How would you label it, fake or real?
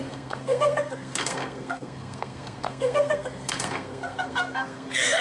fake